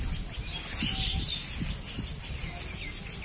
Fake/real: real